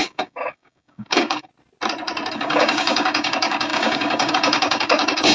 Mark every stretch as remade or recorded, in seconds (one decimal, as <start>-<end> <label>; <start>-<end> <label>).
0.0-1.5 remade; 1.5-2.3 recorded; 2.3-5.3 remade